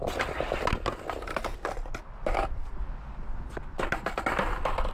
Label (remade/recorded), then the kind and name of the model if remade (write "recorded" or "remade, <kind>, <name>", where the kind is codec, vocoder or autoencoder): recorded